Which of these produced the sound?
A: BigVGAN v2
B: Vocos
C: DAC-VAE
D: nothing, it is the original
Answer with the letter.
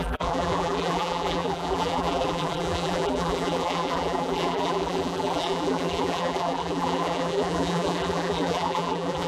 A